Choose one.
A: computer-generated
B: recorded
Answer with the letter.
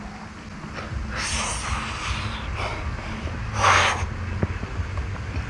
B